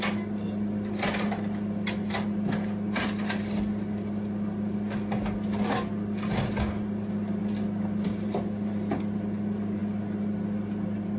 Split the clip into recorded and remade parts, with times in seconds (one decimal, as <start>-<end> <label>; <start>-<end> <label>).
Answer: 0.0-11.2 recorded